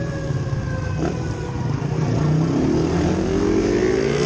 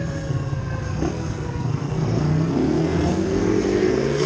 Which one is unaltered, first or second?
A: first